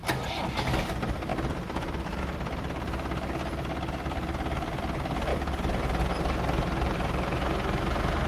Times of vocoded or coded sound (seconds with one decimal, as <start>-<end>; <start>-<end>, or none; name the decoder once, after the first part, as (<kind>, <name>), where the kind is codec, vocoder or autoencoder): none